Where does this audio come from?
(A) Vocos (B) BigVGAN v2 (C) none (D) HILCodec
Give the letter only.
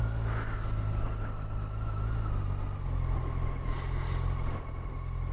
C